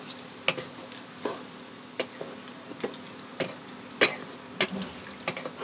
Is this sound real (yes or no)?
yes